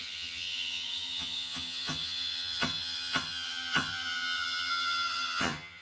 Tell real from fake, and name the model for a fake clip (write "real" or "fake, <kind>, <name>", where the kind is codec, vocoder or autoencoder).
fake, vocoder, HiFi-GAN